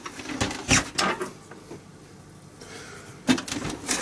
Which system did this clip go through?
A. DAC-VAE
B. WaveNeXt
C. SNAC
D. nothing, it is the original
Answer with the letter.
D